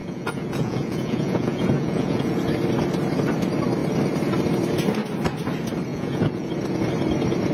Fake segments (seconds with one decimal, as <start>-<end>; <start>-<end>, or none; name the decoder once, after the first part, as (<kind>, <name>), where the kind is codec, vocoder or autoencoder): 0.0-2.4 (vocoder, Vocos); 5.9-6.5